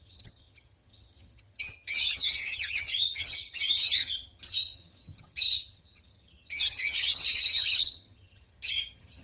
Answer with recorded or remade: remade